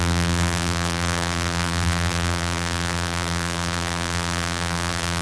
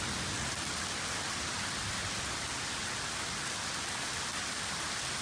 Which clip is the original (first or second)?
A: second